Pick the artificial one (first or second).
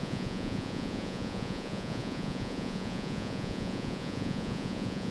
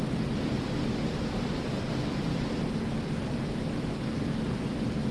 first